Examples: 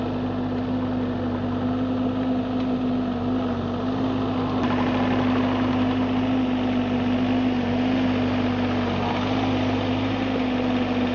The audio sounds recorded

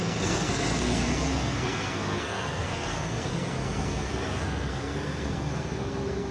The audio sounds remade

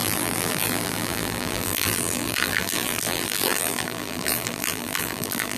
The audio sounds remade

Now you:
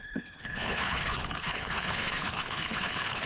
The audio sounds remade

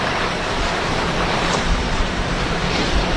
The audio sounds remade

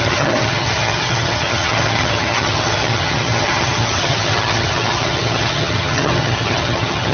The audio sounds remade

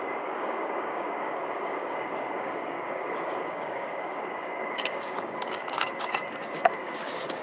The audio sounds remade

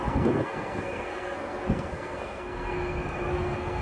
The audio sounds remade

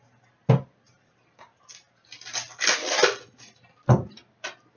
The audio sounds recorded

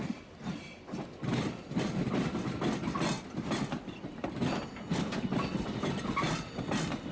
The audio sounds recorded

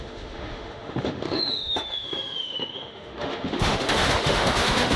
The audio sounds remade